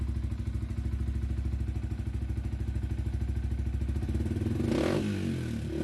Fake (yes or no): no